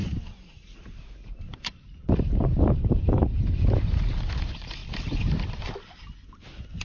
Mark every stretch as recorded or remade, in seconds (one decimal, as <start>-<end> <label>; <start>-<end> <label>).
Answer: 0.0-4.1 remade; 4.1-6.8 recorded